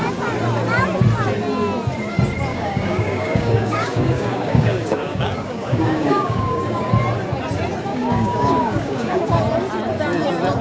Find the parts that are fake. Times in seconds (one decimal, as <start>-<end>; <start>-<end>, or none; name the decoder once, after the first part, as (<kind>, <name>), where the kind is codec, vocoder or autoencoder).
2.5-6.9 (codec, DAC); 7.9-9.4